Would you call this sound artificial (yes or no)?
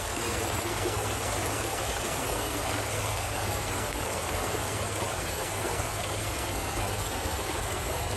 yes